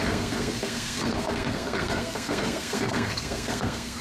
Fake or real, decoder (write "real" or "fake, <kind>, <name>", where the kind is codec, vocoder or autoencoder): fake, codec, SNAC